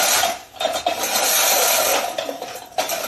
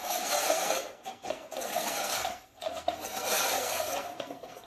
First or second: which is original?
first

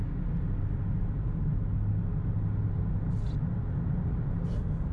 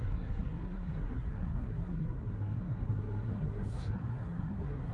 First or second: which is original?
first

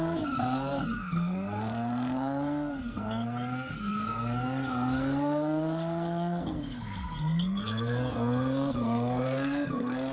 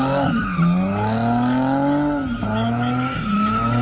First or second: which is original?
second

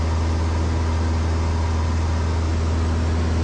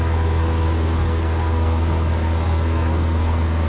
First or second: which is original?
first